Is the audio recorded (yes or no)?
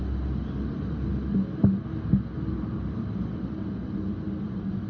yes